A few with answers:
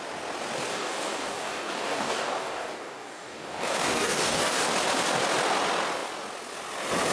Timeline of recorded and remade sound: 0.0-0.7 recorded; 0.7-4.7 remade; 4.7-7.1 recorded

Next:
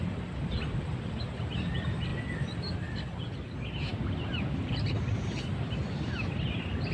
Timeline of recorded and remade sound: 0.0-6.9 recorded